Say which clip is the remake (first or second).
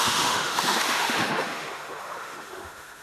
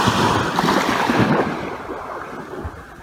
first